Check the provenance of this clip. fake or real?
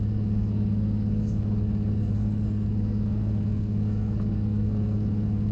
fake